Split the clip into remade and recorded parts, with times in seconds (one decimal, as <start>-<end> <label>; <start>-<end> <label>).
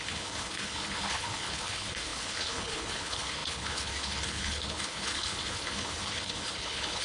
0.0-7.0 remade